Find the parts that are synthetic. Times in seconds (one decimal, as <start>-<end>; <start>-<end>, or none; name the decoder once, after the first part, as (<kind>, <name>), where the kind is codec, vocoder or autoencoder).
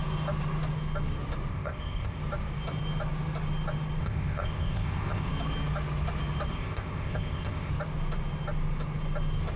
1.5-2.2 (codec, ZipCodec); 4.0-5.3; 6.5-7.7